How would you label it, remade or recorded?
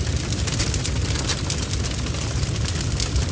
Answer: recorded